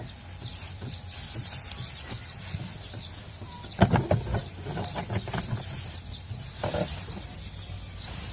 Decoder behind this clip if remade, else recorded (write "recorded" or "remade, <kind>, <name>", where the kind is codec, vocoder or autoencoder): recorded